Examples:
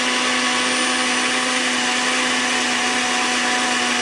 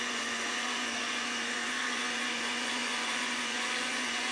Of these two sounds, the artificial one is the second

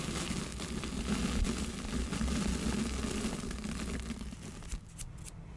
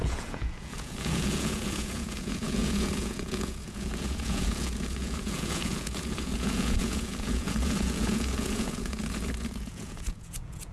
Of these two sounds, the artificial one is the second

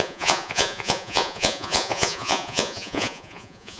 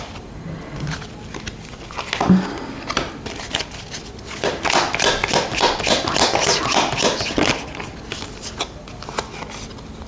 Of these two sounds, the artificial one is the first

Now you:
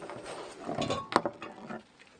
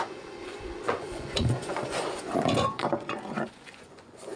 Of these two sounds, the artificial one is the second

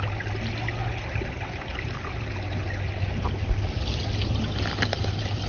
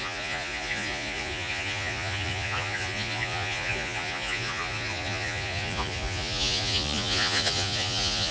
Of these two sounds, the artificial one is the second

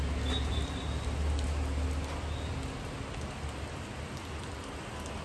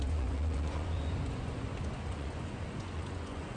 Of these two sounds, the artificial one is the second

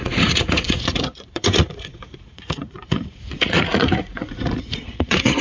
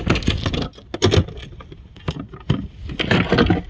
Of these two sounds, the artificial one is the first